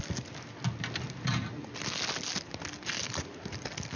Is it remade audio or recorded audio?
recorded